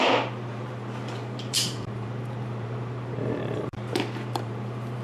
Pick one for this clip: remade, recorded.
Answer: remade